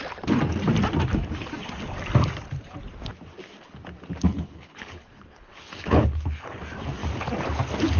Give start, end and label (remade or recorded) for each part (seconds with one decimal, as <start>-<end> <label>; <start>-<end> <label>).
0.0-4.3 recorded; 4.3-6.6 remade; 6.6-8.0 recorded